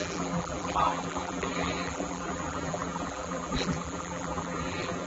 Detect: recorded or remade remade